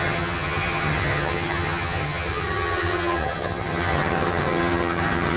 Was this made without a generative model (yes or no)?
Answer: no